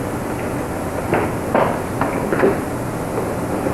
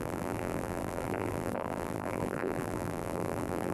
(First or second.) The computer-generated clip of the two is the second